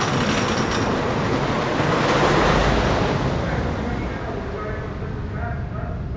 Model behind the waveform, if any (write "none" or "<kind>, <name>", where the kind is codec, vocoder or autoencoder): none